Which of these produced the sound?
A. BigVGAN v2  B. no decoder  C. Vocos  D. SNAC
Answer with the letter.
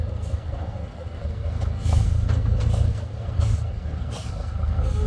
D